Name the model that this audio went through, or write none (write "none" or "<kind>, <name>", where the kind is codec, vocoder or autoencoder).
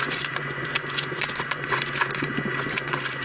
vocoder, Vocos